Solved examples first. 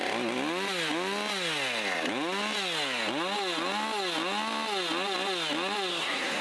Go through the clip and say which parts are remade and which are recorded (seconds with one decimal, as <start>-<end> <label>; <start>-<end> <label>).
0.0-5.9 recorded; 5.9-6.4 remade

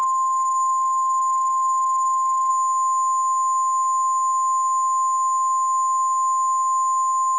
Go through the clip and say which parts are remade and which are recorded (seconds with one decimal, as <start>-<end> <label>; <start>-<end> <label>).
0.0-2.5 remade; 2.5-7.4 recorded

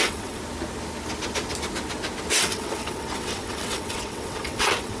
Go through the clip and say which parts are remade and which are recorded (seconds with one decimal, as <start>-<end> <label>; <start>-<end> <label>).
0.0-0.4 remade; 0.4-2.4 recorded; 2.4-5.0 remade